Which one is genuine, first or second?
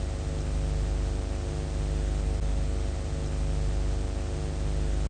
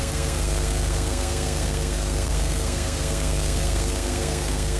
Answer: first